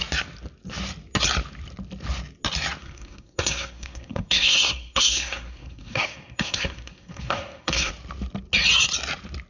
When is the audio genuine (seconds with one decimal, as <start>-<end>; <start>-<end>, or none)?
0.0-2.8; 7.9-9.5